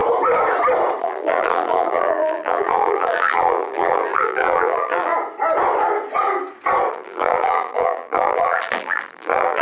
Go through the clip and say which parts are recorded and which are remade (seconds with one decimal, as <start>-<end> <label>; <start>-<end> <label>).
0.0-1.0 recorded; 1.0-5.1 remade; 5.1-6.9 recorded; 6.9-9.6 remade